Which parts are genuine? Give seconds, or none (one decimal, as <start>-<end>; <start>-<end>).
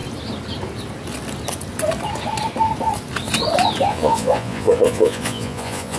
0.0-3.9